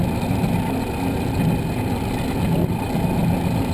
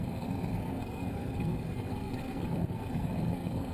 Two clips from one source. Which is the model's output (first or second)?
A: second